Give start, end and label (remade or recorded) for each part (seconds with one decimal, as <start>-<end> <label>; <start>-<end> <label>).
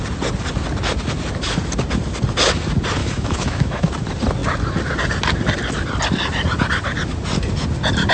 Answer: 0.0-3.0 recorded; 3.0-3.9 remade; 3.9-8.1 recorded